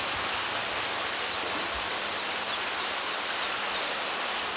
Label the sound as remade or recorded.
recorded